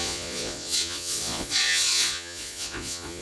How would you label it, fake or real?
fake